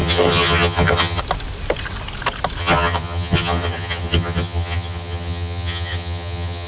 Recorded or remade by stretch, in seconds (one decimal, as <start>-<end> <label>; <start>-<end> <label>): 0.0-1.2 remade; 1.2-2.6 recorded; 2.6-6.7 remade